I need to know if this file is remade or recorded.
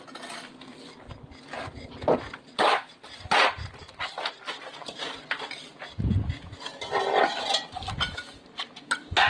recorded